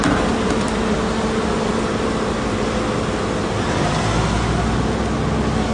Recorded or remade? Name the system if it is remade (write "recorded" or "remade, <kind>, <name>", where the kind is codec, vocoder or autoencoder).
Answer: recorded